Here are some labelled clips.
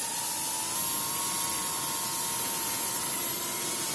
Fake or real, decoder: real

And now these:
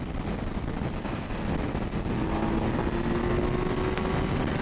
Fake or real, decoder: real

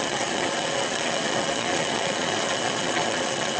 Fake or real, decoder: fake, vocoder, Vocos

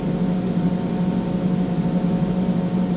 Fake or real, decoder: real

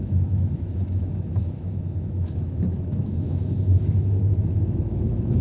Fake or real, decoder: fake, autoencoder, DAC-VAE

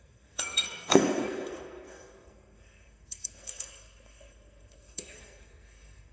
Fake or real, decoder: fake, codec, SNAC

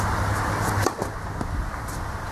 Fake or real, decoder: real